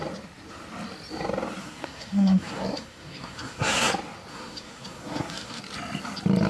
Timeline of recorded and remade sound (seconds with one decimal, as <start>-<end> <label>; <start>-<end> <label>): 0.0-1.6 recorded; 1.6-3.9 remade; 3.9-4.3 recorded; 4.3-5.6 remade; 5.6-6.5 recorded